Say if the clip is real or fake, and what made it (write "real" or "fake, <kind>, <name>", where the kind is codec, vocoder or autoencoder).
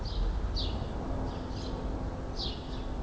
real